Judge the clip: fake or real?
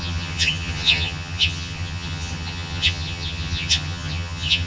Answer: fake